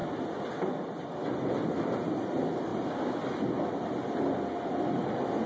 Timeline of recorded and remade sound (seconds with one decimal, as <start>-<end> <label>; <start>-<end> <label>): 0.0-5.5 recorded